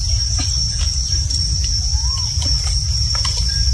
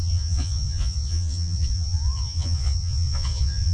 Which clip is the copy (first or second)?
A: second